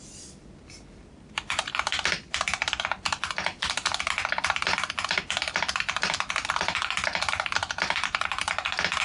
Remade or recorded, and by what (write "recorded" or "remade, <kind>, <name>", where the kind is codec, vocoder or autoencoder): remade, vocoder, BigVGAN v2